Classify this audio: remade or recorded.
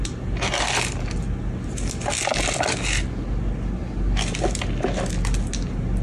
recorded